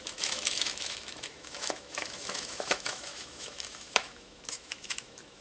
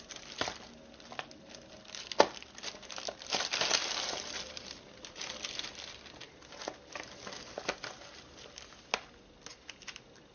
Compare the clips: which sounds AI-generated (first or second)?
first